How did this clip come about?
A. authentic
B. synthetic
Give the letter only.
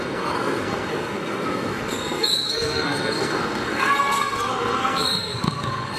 B